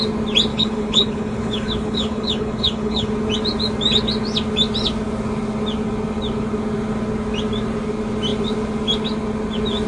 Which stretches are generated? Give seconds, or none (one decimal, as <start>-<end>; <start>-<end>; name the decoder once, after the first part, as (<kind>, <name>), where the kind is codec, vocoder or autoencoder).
0.5-3.1 (codec, HILCodec)